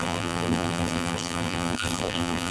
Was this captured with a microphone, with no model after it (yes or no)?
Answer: no